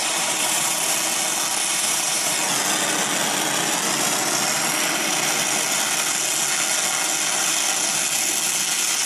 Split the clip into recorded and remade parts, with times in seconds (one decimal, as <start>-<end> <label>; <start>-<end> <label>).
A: 0.0-0.9 remade; 0.9-1.7 recorded; 1.7-2.3 remade; 2.3-9.1 recorded